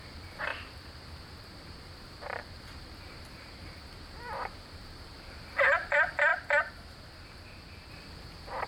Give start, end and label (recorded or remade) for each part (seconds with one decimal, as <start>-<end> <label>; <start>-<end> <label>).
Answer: 0.0-0.5 recorded; 0.5-5.4 remade; 5.4-8.7 recorded